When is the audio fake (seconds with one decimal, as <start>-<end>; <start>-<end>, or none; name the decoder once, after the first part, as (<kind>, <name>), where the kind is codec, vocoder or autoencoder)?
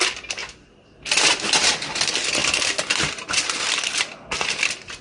none